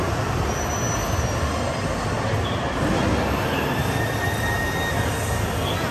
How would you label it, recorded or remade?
recorded